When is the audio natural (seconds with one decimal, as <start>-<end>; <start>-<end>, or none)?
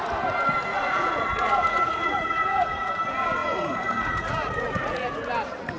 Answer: 0.0-0.7; 2.9-3.4; 5.2-5.8